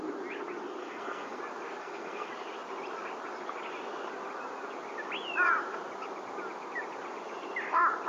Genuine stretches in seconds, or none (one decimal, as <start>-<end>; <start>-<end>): 0.0-0.8; 1.4-1.8; 2.3-8.1